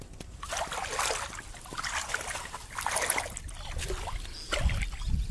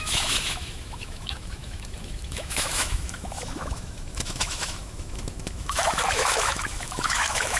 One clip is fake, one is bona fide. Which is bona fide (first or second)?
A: first